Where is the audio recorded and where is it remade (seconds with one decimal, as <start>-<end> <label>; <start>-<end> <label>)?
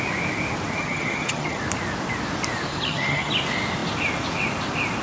0.0-0.8 recorded; 0.8-1.6 remade; 1.6-2.7 recorded; 2.7-3.3 remade; 3.3-5.0 recorded